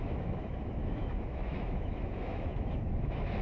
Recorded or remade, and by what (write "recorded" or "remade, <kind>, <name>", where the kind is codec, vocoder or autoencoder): remade, autoencoder, DAC-VAE